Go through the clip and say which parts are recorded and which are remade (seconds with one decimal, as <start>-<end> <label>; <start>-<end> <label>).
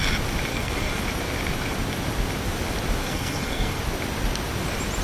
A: 0.0-0.5 recorded; 0.5-1.0 remade; 1.0-3.0 recorded; 3.0-3.8 remade; 3.8-5.0 recorded